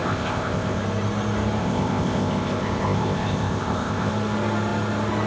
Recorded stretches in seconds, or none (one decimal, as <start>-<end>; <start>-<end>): 0.8-1.6; 4.1-5.3